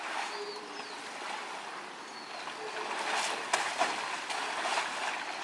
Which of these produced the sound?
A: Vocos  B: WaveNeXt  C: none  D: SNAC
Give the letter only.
C